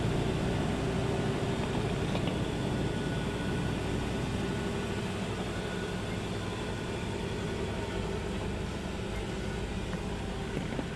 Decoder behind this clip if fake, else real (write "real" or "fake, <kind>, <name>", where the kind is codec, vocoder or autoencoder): real